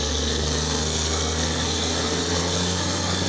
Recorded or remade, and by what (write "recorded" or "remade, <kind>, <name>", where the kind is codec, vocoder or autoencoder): remade, codec, SNAC